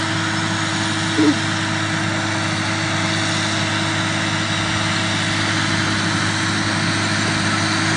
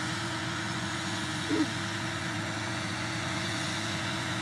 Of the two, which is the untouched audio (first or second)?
first